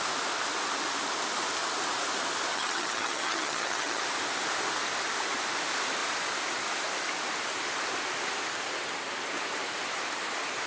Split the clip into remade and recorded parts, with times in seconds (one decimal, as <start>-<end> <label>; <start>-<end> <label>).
0.0-2.5 recorded; 2.5-4.0 remade; 4.0-10.7 recorded